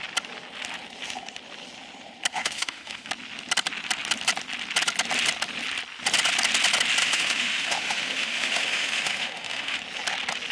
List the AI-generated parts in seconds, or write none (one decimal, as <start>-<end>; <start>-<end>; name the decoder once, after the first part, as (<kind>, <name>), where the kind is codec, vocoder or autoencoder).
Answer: 2.3-3.1 (autoencoder, DAC-VAE); 7.0-9.8